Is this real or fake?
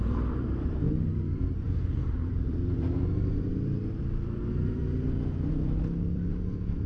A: fake